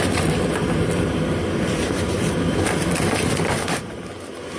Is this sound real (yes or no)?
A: yes